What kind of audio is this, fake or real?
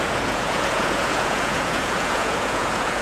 fake